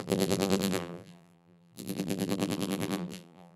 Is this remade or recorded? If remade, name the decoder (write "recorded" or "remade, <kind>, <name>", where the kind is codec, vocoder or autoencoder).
remade, vocoder, BigVGAN v2